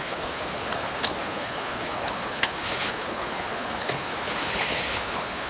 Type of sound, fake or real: fake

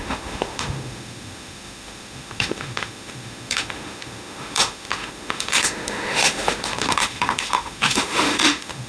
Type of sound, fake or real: fake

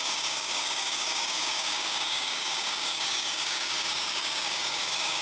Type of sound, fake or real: fake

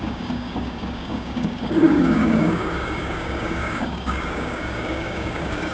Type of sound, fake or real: fake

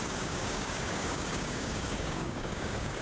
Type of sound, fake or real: fake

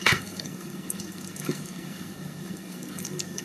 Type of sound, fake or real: fake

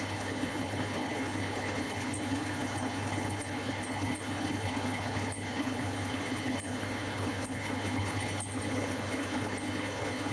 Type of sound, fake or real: fake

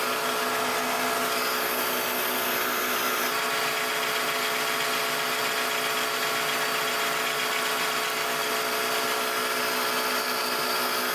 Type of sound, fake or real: real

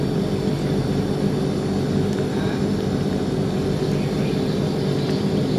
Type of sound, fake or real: real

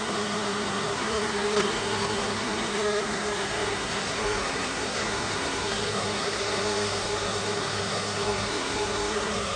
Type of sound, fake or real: fake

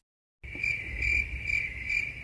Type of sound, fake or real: real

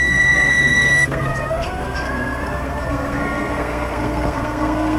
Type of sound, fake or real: fake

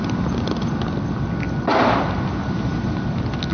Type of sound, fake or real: real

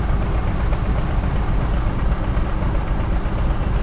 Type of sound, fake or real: real